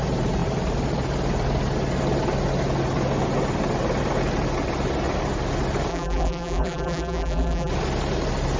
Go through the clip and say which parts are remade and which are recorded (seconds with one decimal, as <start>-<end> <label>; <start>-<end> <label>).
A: 0.0-5.9 recorded; 5.9-7.7 remade; 7.7-8.6 recorded